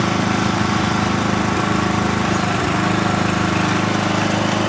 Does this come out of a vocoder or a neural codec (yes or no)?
no